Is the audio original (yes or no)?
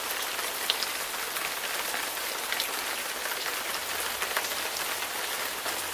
yes